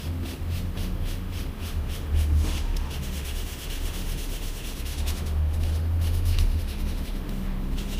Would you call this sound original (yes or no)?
no